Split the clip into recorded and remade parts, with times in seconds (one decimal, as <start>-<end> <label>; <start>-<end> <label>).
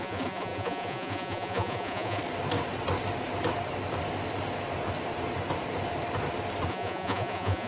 0.0-2.2 remade; 2.2-6.7 recorded; 6.7-7.7 remade